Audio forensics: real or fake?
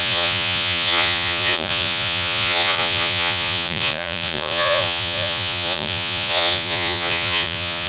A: fake